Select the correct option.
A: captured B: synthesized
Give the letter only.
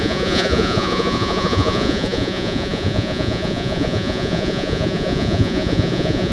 B